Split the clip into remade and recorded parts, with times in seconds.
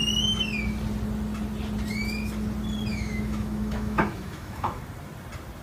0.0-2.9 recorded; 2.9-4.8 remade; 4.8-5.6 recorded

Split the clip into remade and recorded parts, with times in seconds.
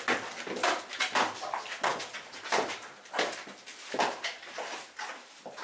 0.0-5.6 recorded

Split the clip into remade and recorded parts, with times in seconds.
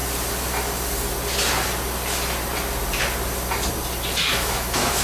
0.0-4.3 recorded; 4.3-5.0 remade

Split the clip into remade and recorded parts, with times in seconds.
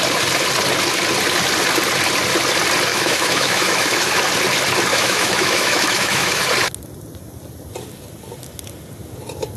0.0-2.9 recorded; 2.9-4.1 remade; 4.1-4.9 recorded; 4.9-6.4 remade; 6.4-9.6 recorded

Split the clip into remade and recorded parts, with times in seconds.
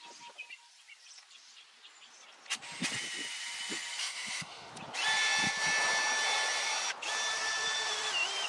0.0-4.0 recorded; 4.0-4.7 remade; 4.7-8.5 recorded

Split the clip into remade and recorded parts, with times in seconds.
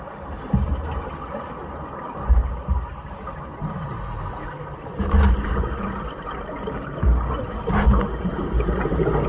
0.0-9.3 recorded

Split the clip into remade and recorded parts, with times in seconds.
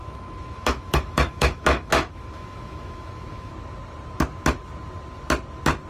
0.0-3.5 remade; 3.5-5.9 recorded